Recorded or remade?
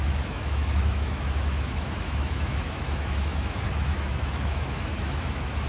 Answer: remade